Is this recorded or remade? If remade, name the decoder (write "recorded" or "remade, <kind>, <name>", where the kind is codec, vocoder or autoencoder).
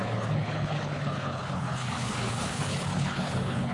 remade, codec, HILCodec